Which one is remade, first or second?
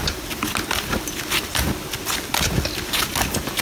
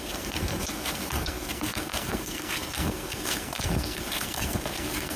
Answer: second